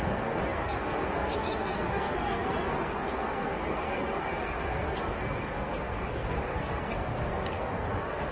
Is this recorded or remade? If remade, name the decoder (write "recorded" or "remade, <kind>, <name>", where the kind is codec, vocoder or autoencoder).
remade, codec, SNAC